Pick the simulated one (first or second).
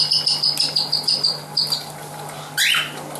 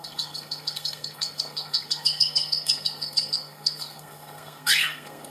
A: second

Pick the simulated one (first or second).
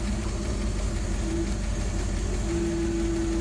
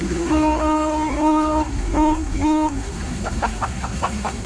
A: second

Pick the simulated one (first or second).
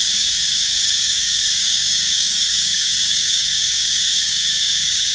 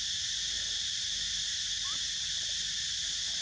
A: first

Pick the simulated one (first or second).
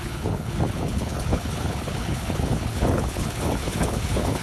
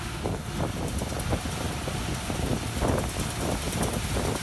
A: first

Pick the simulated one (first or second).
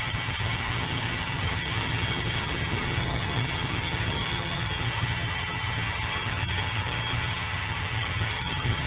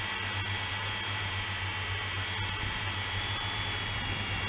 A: first